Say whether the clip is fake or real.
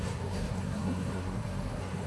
fake